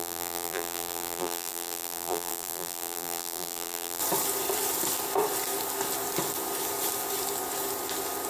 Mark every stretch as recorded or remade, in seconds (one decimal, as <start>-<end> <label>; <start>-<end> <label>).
0.0-4.0 remade; 4.0-8.3 recorded